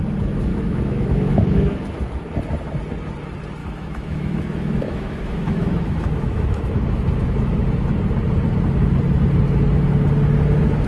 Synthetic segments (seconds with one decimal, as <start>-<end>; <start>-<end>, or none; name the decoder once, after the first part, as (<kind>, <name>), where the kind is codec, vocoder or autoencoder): 0.5-2.1 (autoencoder, DAC-VAE); 3.6-7.6